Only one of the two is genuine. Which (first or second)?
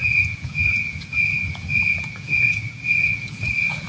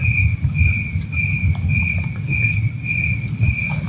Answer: second